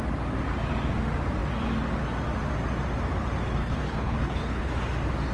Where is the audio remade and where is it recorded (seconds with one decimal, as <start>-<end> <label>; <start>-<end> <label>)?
0.0-3.6 recorded; 3.6-4.7 remade; 4.7-5.3 recorded